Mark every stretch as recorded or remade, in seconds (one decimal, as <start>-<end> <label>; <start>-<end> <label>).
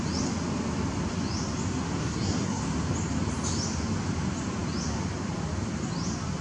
0.0-2.0 recorded; 2.0-2.6 remade; 2.6-6.4 recorded